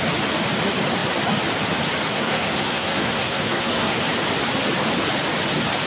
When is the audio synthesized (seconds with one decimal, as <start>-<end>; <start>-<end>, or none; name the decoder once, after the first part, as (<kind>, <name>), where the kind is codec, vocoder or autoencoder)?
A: 2.1-4.0 (codec, SNAC)